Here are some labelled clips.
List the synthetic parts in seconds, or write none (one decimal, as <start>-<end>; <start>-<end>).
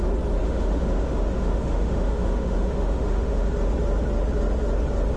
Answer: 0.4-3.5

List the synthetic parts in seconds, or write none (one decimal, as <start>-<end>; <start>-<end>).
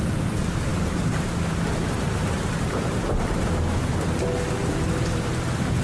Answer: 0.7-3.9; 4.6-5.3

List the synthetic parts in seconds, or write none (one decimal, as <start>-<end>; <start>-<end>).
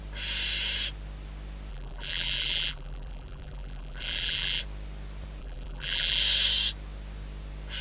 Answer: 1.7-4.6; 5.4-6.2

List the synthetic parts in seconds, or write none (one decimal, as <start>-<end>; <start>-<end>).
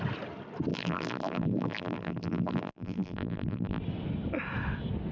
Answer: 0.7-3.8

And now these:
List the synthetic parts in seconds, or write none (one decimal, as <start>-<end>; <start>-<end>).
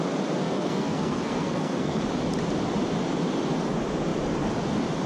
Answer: 0.4-2.0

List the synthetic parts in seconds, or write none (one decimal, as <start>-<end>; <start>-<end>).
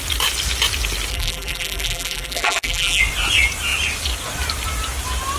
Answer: 1.1-3.0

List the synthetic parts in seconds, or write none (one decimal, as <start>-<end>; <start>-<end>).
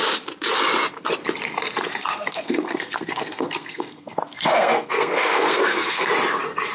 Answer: 2.1-6.1